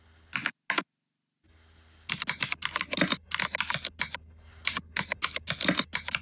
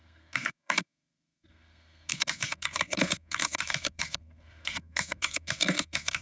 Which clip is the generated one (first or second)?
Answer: second